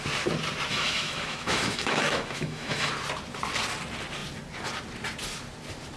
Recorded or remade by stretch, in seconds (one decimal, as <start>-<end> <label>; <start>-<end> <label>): 0.0-0.7 recorded; 0.7-2.9 remade; 2.9-6.0 recorded